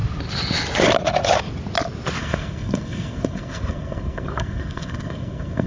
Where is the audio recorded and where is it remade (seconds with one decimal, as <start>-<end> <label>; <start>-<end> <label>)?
0.0-2.2 recorded; 2.2-5.7 remade